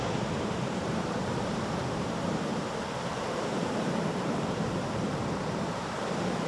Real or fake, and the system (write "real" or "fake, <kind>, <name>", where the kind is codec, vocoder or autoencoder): fake, vocoder, BigVGAN v2